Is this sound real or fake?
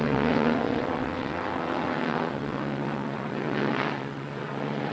fake